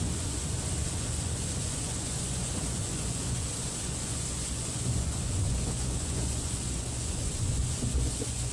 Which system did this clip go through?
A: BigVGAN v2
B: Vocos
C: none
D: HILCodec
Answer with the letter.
B